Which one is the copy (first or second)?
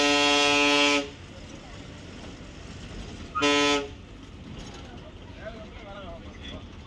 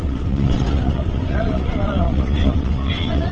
second